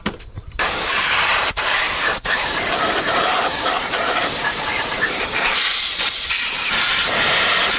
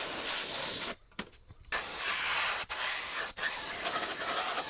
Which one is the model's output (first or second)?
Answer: first